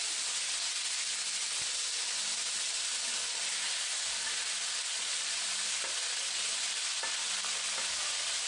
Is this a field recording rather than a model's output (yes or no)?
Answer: yes